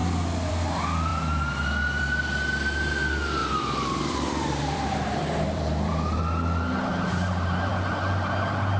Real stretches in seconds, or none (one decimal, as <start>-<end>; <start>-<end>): 0.0-3.4; 6.2-6.9; 7.7-8.8